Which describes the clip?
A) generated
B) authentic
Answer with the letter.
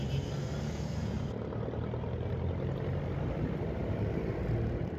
B